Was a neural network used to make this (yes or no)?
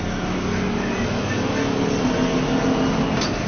no